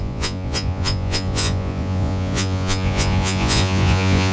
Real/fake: fake